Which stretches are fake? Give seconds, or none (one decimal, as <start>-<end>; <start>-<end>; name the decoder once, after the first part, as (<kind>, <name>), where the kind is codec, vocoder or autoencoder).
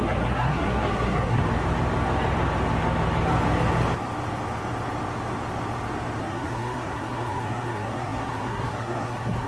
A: 0.0-1.4 (codec, SNAC); 6.2-9.5